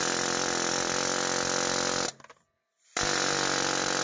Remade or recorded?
recorded